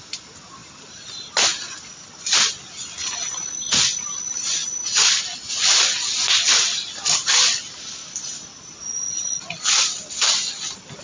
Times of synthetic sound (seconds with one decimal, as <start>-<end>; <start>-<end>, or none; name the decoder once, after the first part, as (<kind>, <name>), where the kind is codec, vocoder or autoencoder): none